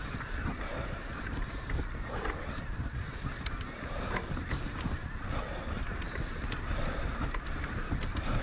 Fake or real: real